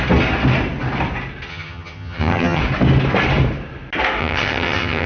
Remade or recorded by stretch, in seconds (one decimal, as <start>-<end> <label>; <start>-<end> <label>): 0.0-1.5 recorded; 1.5-2.6 remade; 2.6-4.2 recorded; 4.2-5.1 remade